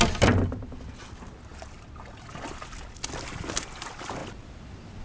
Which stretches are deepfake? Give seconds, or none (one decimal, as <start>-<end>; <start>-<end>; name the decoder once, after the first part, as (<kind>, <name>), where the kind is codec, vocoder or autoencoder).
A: none